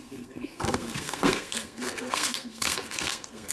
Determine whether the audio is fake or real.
fake